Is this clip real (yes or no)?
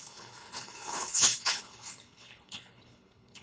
no